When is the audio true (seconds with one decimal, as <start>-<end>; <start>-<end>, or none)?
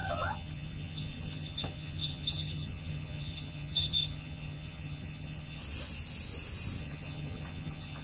5.6-6.8